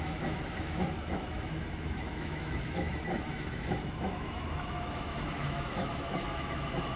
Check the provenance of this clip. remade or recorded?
remade